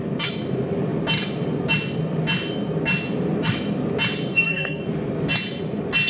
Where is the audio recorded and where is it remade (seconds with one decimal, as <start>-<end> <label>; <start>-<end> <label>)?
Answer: 0.0-4.3 recorded; 4.3-4.8 remade; 4.8-6.1 recorded